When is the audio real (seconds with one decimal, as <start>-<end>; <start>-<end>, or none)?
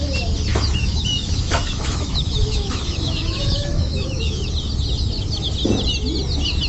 0.0-0.5; 4.5-6.7